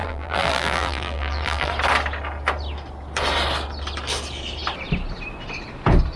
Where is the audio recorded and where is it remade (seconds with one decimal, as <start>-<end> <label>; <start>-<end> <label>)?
0.0-1.7 remade; 1.7-6.2 recorded